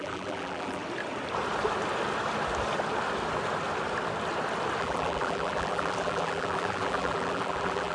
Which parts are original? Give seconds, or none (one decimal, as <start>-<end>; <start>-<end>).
0.8-4.8